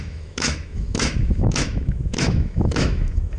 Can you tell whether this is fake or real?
fake